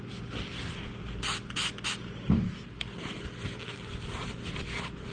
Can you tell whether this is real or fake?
real